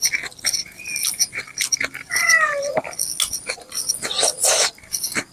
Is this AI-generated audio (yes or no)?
no